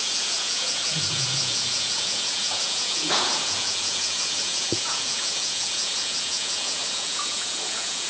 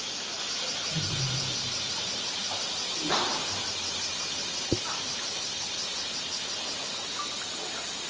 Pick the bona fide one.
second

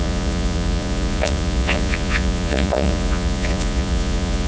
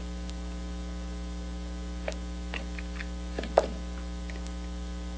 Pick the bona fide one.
second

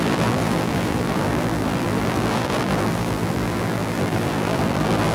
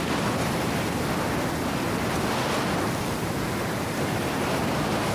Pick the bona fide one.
second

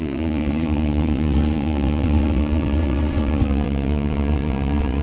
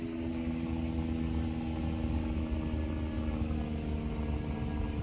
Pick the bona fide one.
second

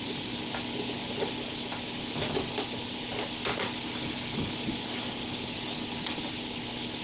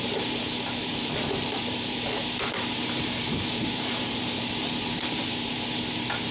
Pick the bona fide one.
first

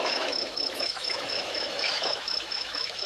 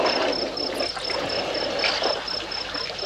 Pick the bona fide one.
second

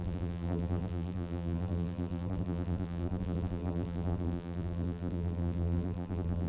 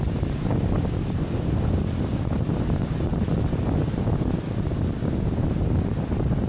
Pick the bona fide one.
second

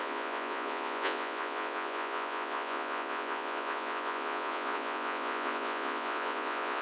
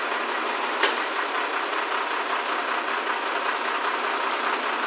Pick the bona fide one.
second